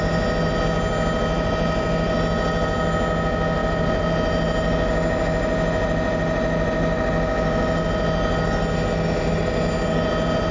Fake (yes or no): no